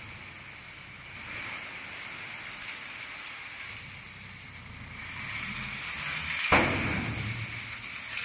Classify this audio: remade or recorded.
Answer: recorded